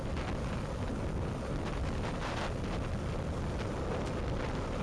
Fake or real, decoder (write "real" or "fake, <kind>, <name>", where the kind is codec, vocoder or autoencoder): real